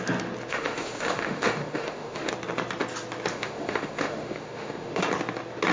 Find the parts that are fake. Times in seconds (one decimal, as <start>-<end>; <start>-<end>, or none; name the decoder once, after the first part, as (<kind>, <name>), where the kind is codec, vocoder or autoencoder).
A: 0.5-2.3 (autoencoder, DAC-VAE); 3.3-5.0